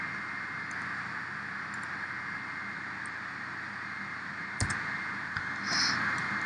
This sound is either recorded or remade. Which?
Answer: recorded